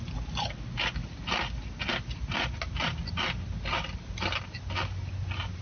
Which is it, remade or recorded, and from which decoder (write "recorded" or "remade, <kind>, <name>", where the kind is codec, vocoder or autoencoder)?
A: recorded